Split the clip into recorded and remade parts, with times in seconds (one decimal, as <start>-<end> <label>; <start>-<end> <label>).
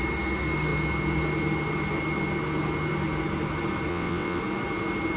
0.0-3.9 recorded; 3.9-4.4 remade; 4.4-5.2 recorded